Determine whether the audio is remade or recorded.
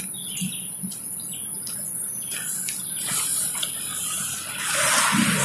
recorded